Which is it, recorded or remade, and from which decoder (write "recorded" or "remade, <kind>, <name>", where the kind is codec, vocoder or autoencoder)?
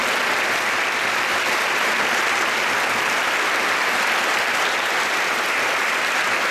recorded